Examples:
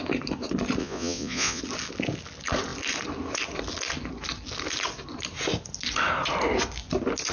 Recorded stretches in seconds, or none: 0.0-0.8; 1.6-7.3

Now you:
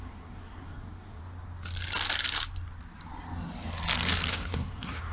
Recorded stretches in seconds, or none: 1.2-4.3

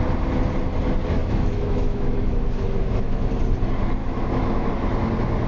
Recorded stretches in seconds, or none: 0.0-1.2; 3.3-4.0; 4.7-5.5

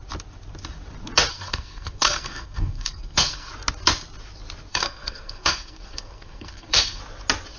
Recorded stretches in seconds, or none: 0.0-1.3; 3.5-4.7; 7.0-7.6